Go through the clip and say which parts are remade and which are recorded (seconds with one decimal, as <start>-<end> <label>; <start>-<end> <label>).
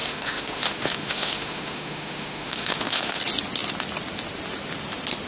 0.0-3.2 remade; 3.2-5.3 recorded